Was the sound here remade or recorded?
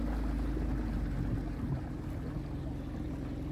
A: recorded